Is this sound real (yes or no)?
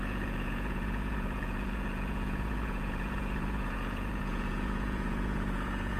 no